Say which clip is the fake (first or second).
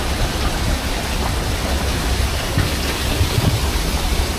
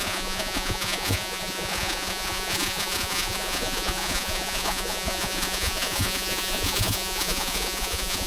second